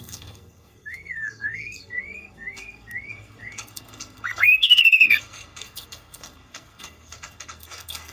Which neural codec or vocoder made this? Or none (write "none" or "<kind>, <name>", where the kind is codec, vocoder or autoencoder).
codec, SNAC